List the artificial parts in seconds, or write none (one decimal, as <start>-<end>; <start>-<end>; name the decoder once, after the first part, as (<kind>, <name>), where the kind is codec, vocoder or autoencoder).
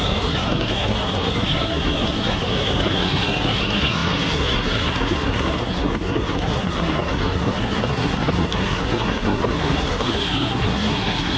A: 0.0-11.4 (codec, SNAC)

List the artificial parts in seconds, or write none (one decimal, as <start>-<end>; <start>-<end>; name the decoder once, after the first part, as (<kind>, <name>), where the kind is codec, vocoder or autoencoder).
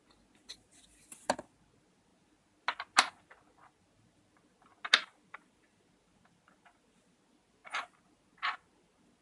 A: none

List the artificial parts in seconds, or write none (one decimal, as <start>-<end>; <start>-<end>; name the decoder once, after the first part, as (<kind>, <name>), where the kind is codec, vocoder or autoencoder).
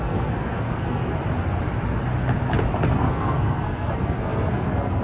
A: 0.0-1.2 (codec, SNAC); 2.9-5.0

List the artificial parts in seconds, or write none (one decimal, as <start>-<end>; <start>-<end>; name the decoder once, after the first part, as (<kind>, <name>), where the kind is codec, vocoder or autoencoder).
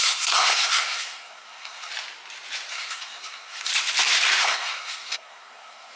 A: 0.0-1.9 (codec, SNAC); 2.7-3.7; 4.4-6.0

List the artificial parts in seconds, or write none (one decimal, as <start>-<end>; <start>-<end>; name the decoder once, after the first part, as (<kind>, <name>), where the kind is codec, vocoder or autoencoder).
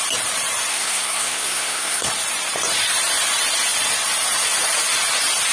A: 0.7-2.1 (codec, SNAC)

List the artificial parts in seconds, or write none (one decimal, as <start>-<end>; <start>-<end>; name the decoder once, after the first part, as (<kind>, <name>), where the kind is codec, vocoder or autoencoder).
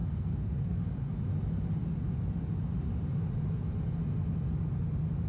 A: 0.0-0.8 (codec, SNAC)